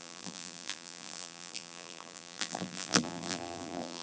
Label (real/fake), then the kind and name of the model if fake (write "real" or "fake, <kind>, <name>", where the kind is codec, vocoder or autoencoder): fake, vocoder, BigVGAN v2